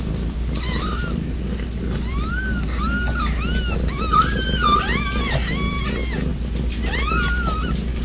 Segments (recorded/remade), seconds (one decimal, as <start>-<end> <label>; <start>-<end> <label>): 0.0-8.0 recorded